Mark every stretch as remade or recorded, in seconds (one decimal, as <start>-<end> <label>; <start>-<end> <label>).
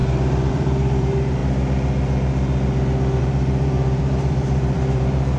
0.0-1.4 remade; 1.4-3.2 recorded; 3.2-5.4 remade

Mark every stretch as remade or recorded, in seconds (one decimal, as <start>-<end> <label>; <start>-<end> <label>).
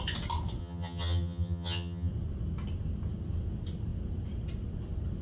0.0-0.6 recorded; 0.6-2.1 remade; 2.1-5.2 recorded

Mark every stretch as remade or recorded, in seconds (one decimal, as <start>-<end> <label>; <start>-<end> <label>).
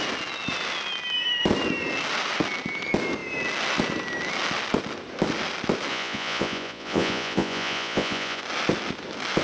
0.0-5.9 recorded; 5.9-8.4 remade; 8.4-9.4 recorded